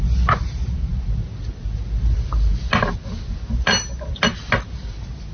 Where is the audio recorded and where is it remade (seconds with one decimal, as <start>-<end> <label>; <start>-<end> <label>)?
0.0-5.3 recorded